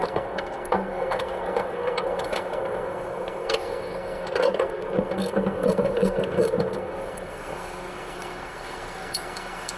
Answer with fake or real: fake